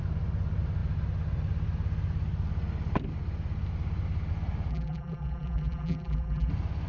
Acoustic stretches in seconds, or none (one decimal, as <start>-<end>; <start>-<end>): 0.0-4.7; 6.5-6.9